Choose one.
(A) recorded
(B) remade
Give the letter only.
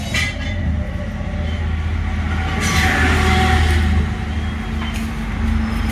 A